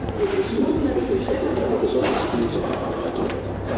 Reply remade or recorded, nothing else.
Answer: remade